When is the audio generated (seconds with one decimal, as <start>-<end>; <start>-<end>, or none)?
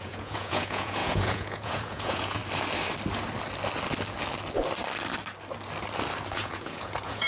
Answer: 0.0-2.4; 6.3-7.3